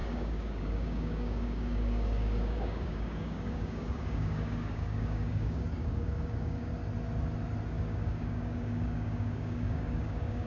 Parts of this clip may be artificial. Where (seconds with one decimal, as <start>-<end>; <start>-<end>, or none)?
0.0-6.7; 7.7-10.5